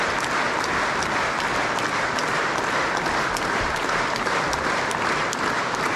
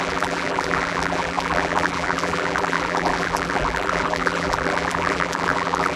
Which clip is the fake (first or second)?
second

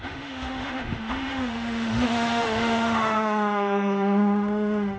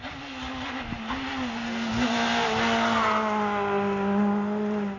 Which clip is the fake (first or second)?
first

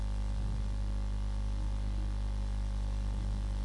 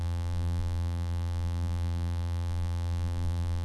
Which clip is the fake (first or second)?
second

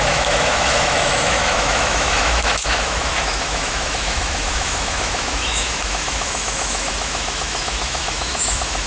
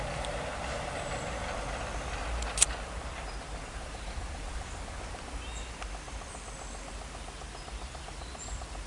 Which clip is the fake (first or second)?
first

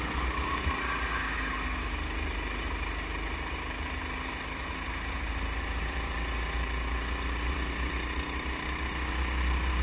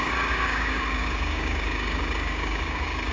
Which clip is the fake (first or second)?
second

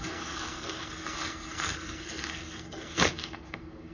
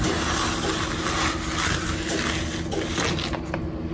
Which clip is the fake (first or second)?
first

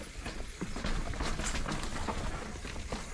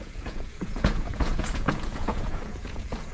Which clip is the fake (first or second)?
second